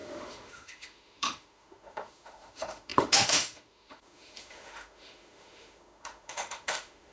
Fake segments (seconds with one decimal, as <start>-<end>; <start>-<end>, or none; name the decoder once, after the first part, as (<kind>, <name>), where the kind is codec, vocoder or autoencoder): 0.0-7.1 (autoencoder, DAC-VAE)